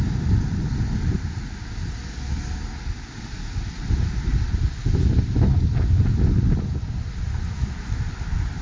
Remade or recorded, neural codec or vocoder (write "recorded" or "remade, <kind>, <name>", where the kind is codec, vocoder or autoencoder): recorded